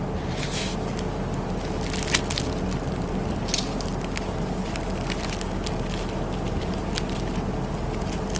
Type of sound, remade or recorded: recorded